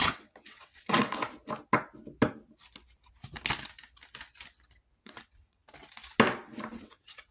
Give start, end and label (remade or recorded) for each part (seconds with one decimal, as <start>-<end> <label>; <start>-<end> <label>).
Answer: 0.0-1.2 remade; 1.2-5.0 recorded; 5.0-5.6 remade; 5.6-6.7 recorded; 6.7-7.3 remade